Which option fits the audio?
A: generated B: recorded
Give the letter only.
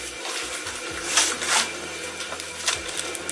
B